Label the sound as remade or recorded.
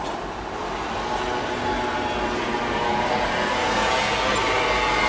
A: recorded